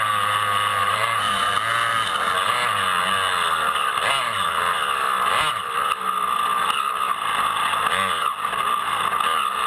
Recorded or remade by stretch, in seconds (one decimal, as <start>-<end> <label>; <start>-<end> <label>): 0.0-0.8 recorded; 0.8-1.5 remade; 1.5-9.7 recorded